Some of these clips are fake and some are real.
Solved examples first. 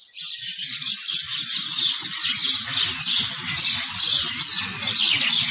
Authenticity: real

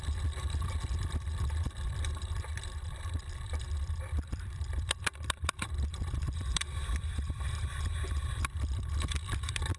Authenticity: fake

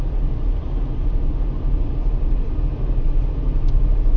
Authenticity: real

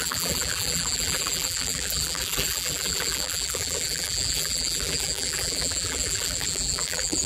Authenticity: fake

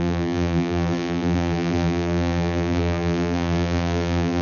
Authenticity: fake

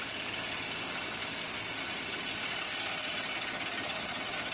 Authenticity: real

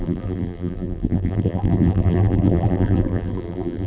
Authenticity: fake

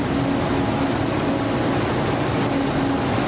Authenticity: real